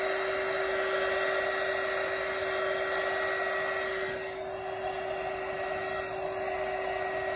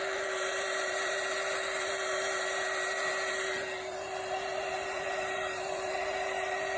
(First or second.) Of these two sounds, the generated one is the second